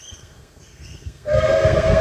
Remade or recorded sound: remade